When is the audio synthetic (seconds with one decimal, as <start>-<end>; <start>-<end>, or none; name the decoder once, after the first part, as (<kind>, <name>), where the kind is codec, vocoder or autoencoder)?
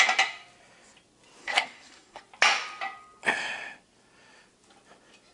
1.4-2.2 (codec, SNAC)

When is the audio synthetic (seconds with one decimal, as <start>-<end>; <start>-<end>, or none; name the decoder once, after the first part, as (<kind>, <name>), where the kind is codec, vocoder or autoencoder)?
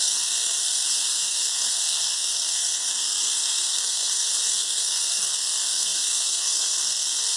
0.0-7.4 (codec, SNAC)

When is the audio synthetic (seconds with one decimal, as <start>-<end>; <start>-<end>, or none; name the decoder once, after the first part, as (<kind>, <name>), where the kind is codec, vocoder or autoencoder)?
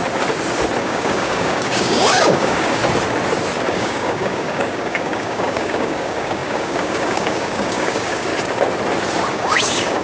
0.8-2.8 (codec, DAC); 3.7-8.3; 9.3-10.0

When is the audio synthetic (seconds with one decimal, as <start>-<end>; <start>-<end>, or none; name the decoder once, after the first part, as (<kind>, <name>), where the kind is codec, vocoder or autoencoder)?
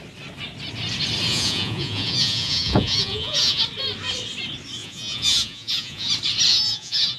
1.3-3.6 (vocoder, Vocos); 4.8-6.1; 6.5-7.2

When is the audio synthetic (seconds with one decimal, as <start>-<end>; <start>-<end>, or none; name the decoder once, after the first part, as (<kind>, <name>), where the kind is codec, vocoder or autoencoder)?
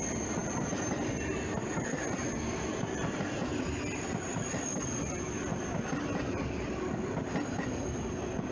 none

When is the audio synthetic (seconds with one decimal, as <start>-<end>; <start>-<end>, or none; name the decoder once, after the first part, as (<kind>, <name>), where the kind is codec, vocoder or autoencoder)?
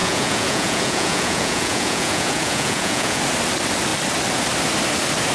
0.0-3.2 (vocoder, Vocos)